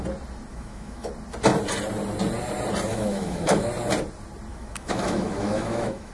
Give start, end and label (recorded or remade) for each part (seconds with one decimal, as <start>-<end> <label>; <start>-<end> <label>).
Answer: 0.0-0.5 recorded; 0.5-1.1 remade; 1.1-2.9 recorded; 2.9-3.7 remade; 3.7-4.5 recorded; 4.5-6.1 remade